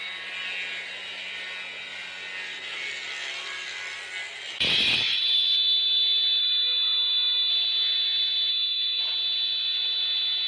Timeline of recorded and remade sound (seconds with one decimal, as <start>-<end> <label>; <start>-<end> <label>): 0.0-6.4 recorded; 6.4-7.5 remade; 7.5-8.5 recorded; 8.5-9.0 remade; 9.0-10.5 recorded